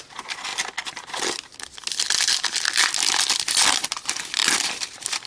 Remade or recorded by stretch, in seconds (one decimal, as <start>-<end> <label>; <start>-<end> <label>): 0.0-0.5 remade; 0.5-3.7 recorded; 3.7-5.3 remade